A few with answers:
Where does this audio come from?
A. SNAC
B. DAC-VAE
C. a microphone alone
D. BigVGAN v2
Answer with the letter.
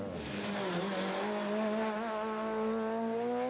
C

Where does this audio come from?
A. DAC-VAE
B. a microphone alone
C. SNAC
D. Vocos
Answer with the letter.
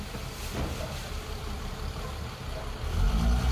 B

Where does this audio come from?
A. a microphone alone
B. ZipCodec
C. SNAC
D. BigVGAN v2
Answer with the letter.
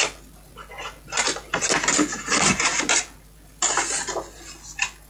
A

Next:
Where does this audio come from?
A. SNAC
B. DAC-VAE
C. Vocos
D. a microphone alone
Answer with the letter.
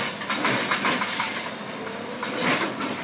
D